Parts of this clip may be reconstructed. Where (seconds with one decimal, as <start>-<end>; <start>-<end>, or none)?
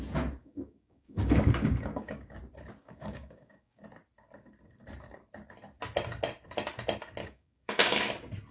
0.4-2.4; 2.8-3.8; 7.2-8.0